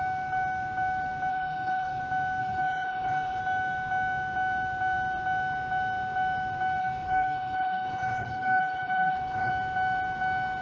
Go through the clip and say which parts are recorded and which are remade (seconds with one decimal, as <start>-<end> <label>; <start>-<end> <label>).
0.0-1.3 recorded; 1.3-2.0 remade; 2.0-2.4 recorded; 2.4-3.4 remade; 3.4-6.8 recorded; 6.8-9.5 remade; 9.5-10.6 recorded